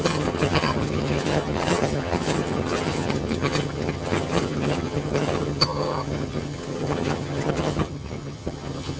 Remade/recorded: remade